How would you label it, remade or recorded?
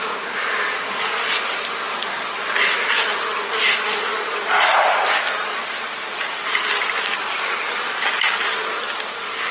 recorded